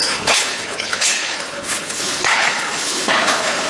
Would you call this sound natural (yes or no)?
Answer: no